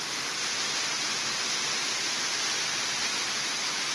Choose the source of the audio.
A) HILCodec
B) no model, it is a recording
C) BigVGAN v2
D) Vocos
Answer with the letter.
B